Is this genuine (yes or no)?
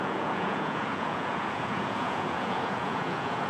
no